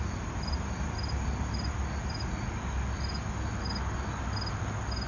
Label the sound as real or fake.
real